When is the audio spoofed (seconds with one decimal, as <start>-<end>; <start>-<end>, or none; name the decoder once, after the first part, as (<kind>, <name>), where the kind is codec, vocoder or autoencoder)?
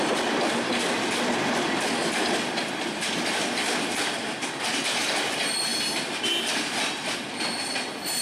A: none